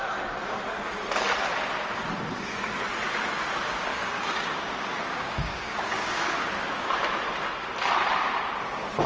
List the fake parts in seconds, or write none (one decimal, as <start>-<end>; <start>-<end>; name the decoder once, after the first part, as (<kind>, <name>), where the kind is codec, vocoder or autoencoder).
3.9-6.9 (codec, DAC)